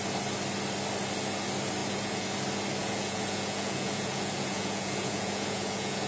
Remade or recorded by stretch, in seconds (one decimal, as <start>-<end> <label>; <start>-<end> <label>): 0.0-1.8 recorded; 1.8-2.3 remade; 2.3-2.8 recorded; 2.8-6.1 remade